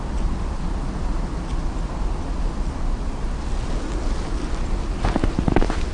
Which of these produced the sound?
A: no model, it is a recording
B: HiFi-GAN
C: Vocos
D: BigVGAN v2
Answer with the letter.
A